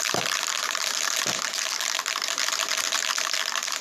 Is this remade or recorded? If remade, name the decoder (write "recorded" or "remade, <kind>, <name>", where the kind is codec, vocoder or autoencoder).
recorded